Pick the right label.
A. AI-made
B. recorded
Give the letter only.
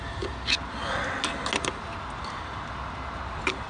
B